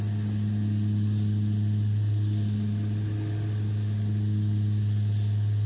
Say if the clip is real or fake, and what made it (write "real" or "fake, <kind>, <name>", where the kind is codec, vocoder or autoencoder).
real